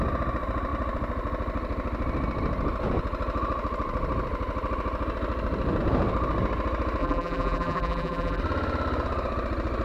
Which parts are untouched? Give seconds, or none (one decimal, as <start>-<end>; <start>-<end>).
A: 0.0-7.0; 8.4-9.8